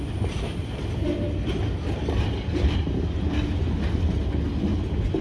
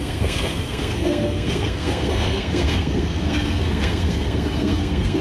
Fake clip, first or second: second